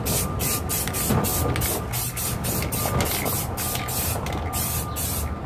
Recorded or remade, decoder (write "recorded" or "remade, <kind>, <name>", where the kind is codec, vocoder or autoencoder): recorded